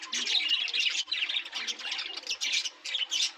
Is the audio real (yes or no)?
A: yes